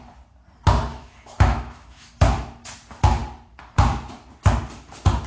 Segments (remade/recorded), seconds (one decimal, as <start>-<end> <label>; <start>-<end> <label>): 0.0-0.9 recorded; 0.9-2.1 remade; 2.1-5.3 recorded